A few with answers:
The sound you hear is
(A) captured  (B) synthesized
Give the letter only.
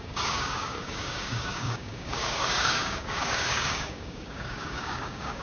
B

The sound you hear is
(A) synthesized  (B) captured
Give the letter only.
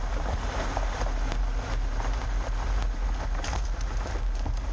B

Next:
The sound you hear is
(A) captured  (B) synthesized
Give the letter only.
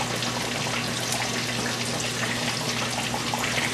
A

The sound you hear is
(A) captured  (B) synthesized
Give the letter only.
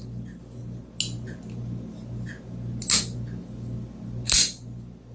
A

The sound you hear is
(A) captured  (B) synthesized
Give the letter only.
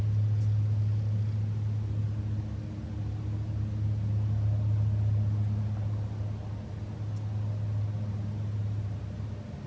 A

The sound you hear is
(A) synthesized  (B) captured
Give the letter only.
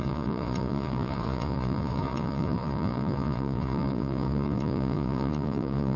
A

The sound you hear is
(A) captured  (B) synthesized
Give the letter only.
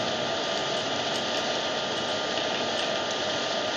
A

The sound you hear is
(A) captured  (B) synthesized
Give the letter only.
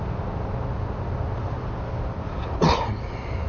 A